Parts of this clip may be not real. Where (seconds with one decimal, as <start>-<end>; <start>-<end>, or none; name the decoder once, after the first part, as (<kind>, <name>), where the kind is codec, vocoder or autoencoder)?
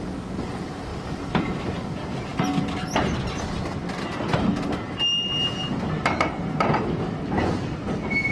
none